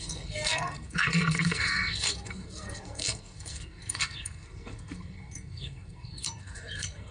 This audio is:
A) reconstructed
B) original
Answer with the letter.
A